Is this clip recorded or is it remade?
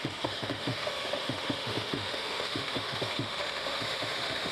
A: remade